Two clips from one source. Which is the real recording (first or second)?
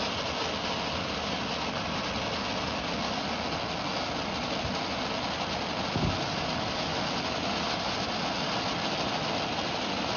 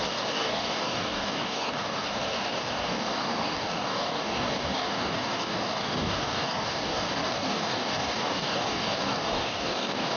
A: first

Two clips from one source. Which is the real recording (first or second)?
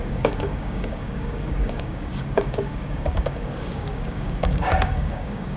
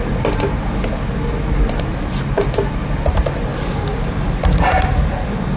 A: second